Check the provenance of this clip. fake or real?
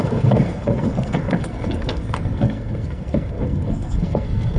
fake